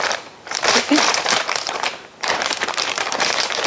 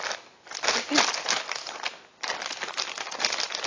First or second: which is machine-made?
first